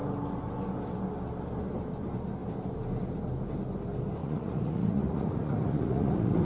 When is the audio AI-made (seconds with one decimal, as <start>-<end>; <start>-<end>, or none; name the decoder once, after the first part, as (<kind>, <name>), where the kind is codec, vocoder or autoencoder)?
4.2-6.4 (vocoder, Vocos)

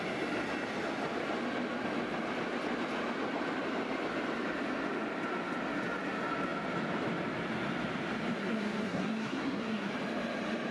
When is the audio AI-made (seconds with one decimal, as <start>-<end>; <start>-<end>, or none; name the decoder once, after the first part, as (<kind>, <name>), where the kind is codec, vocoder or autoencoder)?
8.4-9.9 (codec, SNAC)

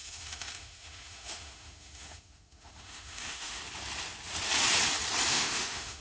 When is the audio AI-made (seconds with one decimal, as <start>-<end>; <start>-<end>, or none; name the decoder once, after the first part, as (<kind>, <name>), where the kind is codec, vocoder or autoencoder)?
0.0-3.6 (autoencoder, DAC-VAE); 5.3-6.0

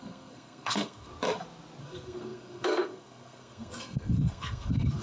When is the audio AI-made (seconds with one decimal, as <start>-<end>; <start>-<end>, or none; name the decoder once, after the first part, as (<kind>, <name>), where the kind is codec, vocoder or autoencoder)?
0.0-1.1 (codec, SNAC); 1.8-5.0

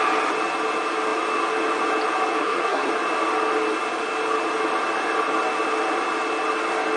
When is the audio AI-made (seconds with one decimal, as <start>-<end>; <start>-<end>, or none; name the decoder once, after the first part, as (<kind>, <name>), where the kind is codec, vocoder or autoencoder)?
2.4-2.9 (codec, SNAC)

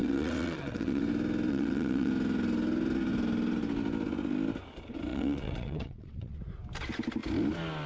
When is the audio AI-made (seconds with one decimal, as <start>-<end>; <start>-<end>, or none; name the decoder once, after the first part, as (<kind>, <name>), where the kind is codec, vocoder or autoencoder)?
0.0-1.0 (vocoder, WaveNeXt); 1.5-2.1; 5.1-6.4

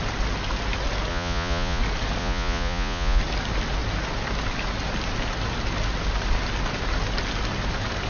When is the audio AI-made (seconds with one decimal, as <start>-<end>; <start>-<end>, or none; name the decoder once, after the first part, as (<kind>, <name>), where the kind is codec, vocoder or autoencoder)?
1.1-1.8 (vocoder, Vocos); 2.2-3.2

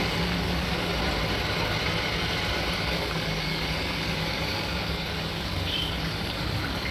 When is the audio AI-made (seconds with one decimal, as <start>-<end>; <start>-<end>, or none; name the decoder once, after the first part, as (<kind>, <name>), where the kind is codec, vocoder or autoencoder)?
0.0-0.9 (codec, DAC); 2.8-6.9